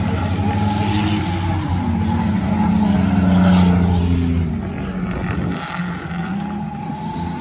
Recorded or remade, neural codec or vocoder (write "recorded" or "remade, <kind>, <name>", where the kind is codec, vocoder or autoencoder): recorded